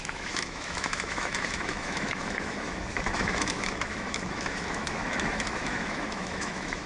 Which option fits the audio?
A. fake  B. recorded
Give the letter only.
A